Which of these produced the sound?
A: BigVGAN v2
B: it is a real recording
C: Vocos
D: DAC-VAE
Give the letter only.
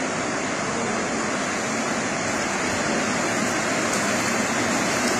B